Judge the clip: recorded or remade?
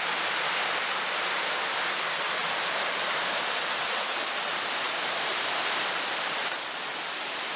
remade